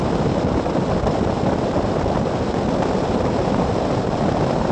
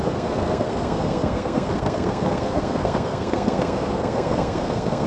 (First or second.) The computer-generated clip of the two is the second